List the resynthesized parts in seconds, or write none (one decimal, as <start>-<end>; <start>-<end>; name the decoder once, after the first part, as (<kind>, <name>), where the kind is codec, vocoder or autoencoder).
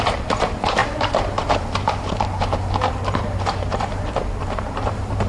0.0-3.9 (vocoder, BigVGAN v2); 4.4-5.3